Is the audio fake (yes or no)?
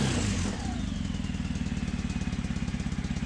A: no